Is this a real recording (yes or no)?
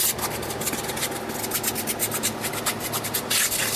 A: yes